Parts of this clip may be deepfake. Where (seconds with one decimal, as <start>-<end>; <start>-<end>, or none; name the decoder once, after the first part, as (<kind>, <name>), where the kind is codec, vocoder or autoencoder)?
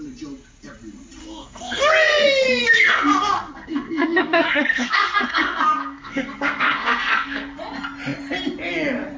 1.2-1.9 (codec, SNAC); 2.6-7.6